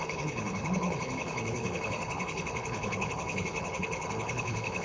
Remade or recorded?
remade